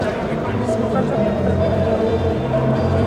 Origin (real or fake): fake